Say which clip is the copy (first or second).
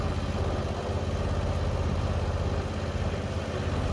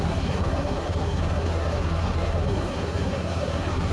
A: second